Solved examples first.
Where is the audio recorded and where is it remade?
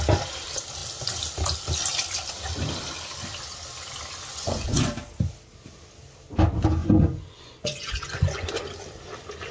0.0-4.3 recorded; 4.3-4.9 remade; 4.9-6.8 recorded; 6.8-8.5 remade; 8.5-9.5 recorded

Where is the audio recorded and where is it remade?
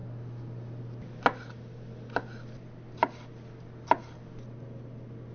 0.0-5.3 recorded